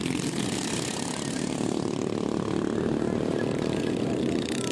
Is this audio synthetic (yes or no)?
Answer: yes